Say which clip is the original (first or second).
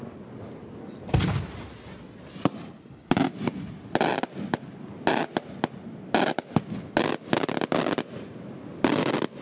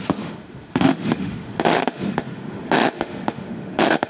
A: first